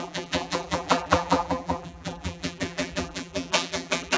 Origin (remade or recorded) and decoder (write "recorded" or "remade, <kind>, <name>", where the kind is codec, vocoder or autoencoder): remade, vocoder, BigVGAN v2